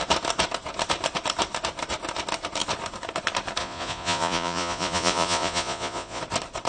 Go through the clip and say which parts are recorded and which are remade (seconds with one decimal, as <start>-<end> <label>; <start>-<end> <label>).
0.0-3.6 recorded; 3.6-6.2 remade; 6.2-6.7 recorded